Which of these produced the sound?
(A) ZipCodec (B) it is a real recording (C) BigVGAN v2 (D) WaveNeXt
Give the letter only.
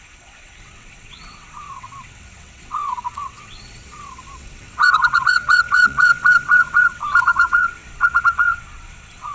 D